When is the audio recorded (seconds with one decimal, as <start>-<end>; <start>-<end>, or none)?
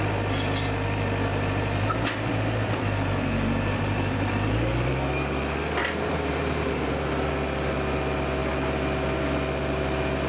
0.0-1.3; 4.9-5.8; 7.3-10.3